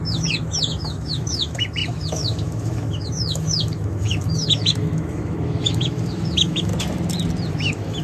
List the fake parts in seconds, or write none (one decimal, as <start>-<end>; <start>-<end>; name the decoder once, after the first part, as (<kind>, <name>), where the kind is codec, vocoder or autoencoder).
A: 0.0-6.7 (autoencoder, DAC-VAE); 7.5-8.0

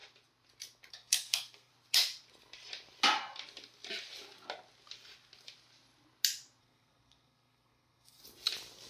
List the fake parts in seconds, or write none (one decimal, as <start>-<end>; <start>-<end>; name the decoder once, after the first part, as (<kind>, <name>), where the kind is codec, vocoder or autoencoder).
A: 0.9-1.7 (codec, SNAC); 6.6-8.2

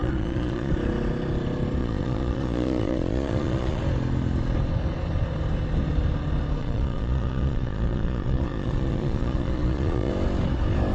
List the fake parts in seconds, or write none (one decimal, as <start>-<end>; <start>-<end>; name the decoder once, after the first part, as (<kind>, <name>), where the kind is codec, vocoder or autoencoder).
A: 0.0-0.7 (vocoder, Vocos); 1.8-3.8; 6.6-10.1

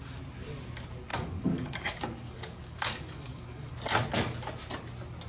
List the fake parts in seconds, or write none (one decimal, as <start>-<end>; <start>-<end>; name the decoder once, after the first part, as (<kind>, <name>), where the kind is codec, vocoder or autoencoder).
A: 1.1-3.7 (codec, DAC)